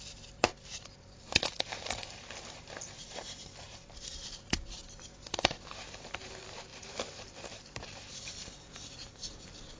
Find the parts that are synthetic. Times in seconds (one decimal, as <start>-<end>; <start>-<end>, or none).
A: 0.0-4.8; 5.3-9.8